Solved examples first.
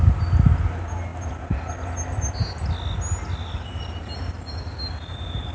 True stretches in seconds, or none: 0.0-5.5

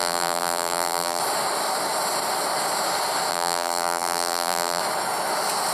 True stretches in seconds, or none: 1.2-3.3; 4.8-5.7